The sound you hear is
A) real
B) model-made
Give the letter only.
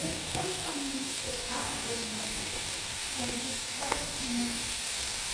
B